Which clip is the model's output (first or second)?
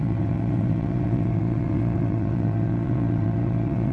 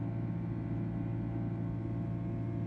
first